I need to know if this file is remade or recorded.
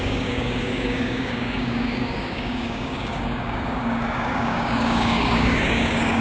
remade